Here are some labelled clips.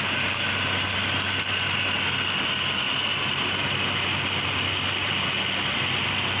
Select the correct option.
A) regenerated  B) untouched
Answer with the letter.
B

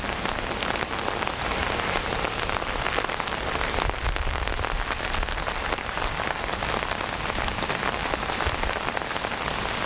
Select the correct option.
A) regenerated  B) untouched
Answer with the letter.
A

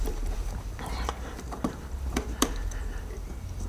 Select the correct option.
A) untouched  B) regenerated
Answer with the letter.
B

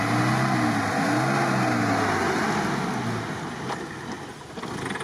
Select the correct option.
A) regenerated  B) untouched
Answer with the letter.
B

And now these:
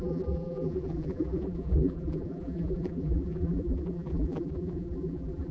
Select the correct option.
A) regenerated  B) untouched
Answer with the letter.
A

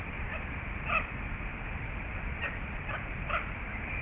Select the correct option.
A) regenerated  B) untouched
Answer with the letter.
A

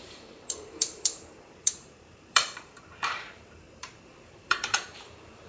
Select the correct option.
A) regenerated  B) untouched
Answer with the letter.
A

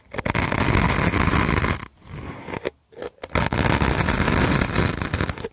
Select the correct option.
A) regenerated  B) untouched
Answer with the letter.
B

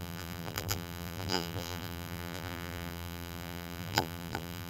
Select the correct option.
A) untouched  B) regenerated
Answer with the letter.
B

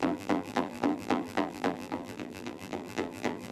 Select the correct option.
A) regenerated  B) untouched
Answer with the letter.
A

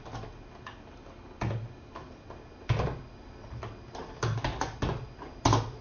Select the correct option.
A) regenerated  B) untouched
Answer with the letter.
B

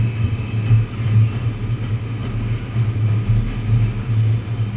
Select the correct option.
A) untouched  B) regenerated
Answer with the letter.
A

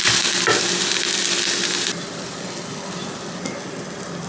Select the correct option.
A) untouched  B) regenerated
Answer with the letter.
A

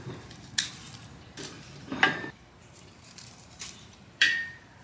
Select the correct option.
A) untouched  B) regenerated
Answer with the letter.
B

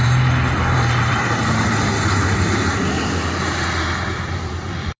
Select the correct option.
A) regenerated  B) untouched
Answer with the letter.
A